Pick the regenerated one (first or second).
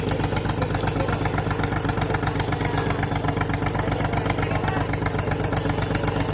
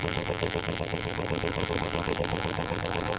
second